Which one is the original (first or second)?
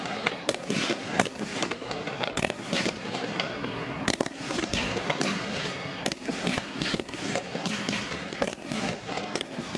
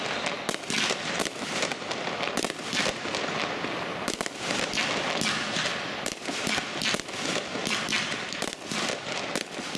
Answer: second